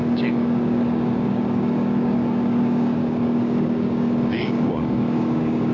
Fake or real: fake